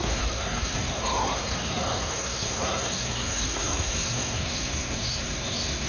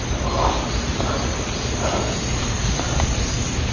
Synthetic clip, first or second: first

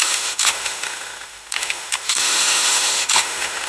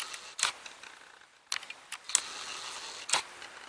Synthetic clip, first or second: first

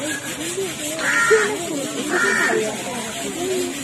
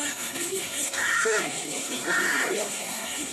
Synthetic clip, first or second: second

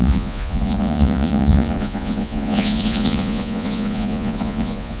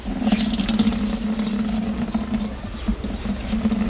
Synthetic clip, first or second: first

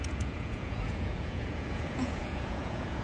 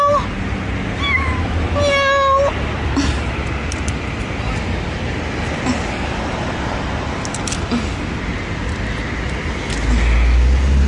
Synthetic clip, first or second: first